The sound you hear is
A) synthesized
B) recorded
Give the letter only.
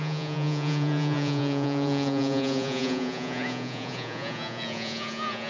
A